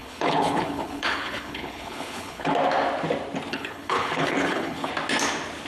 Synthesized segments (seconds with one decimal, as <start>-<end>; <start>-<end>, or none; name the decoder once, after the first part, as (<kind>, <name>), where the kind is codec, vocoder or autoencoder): 0.0-2.5 (codec, HILCodec); 3.5-4.9